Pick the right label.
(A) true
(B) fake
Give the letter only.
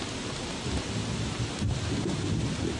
A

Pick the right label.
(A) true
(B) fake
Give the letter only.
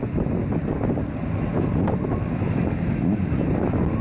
B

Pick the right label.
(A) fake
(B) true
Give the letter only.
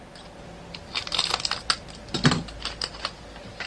B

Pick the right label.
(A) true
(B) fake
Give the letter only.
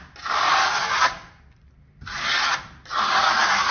A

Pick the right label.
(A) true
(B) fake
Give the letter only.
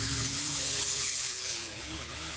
B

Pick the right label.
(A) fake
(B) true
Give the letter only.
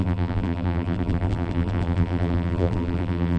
A